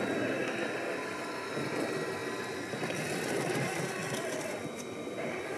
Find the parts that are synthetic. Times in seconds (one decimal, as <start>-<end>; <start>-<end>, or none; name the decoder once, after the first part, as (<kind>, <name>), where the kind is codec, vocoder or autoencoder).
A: 0.0-0.4 (vocoder, BigVGAN v2); 1.6-2.2; 3.3-4.0; 4.7-5.6